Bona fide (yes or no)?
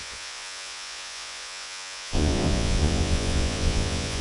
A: no